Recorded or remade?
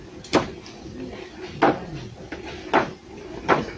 recorded